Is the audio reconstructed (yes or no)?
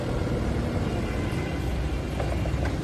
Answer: no